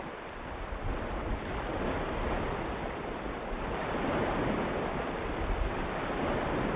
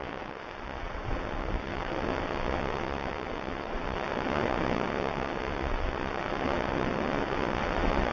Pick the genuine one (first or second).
first